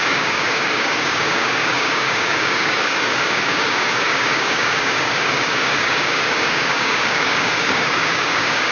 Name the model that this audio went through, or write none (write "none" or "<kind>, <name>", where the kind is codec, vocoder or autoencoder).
codec, DAC